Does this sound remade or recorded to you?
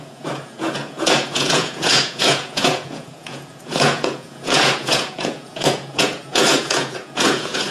remade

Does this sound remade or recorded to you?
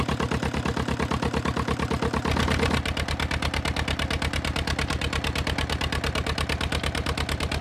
recorded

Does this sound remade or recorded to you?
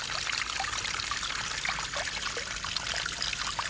recorded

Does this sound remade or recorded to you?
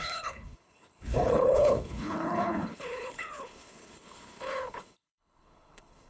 remade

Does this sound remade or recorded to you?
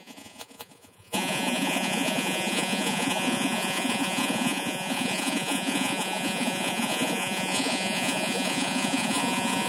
remade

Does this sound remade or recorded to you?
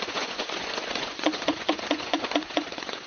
remade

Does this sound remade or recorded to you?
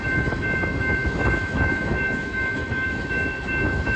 remade